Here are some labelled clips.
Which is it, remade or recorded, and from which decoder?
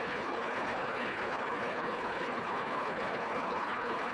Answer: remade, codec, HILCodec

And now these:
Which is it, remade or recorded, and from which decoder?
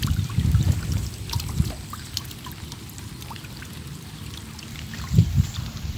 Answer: remade, vocoder, BigVGAN v2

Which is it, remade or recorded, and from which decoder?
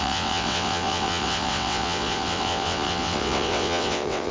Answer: remade, vocoder, WaveNeXt